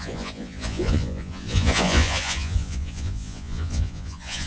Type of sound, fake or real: fake